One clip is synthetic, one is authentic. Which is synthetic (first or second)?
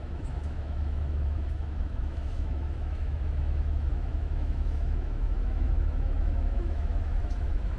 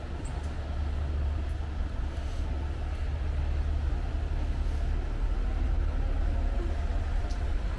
first